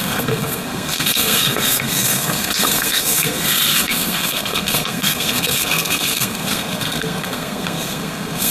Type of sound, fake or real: fake